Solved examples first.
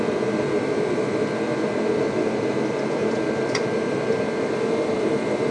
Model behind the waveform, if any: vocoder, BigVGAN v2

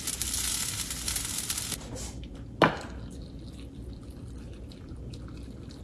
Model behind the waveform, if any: none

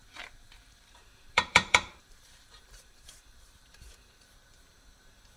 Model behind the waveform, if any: vocoder, BigVGAN v2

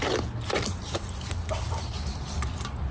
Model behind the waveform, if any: none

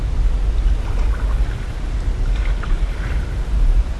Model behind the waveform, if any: none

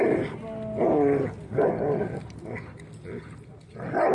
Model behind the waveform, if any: none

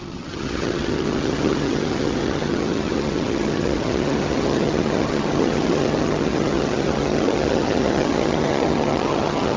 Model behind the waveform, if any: vocoder, HiFi-GAN